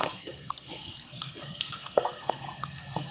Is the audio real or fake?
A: fake